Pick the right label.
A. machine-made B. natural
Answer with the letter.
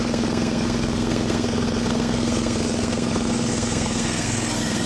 A